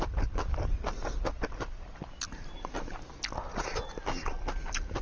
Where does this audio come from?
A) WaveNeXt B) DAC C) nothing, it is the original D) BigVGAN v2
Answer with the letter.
C